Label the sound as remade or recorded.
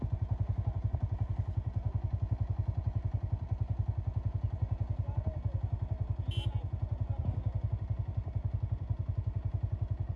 recorded